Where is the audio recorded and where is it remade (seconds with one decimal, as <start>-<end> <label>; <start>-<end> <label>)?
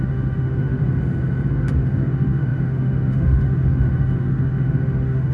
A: 0.0-0.8 remade; 0.8-1.5 recorded; 1.5-5.3 remade